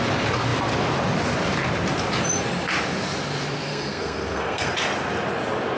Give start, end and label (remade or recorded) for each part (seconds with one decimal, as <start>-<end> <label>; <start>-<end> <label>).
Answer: 0.0-3.7 recorded; 3.7-4.7 remade; 4.7-5.8 recorded